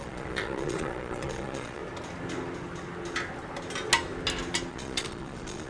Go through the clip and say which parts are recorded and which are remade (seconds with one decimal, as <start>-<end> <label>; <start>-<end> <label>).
0.0-1.8 remade; 1.8-4.7 recorded; 4.7-5.7 remade